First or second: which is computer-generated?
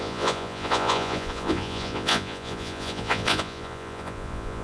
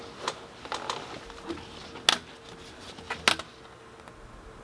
first